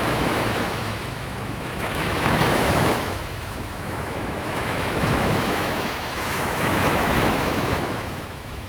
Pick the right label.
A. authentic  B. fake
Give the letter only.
B